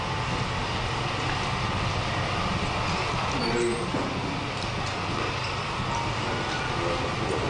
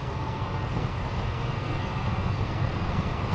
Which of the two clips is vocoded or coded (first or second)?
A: second